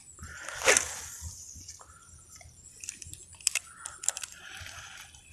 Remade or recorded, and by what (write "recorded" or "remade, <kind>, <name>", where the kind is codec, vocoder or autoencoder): recorded